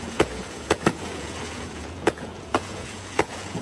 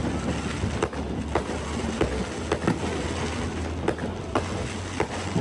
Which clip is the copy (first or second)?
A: first